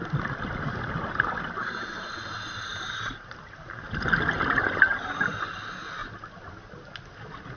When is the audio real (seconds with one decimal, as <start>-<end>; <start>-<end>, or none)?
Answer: 0.0-1.6; 2.2-2.7; 5.1-7.6